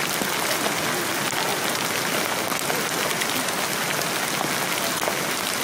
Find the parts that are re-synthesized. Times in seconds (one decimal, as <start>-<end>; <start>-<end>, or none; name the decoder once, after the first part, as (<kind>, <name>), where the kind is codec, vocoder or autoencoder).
none